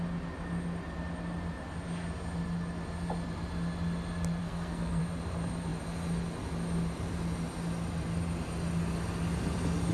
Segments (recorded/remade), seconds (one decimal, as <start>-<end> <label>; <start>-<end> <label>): 0.0-4.4 recorded; 4.4-5.0 remade; 5.0-9.9 recorded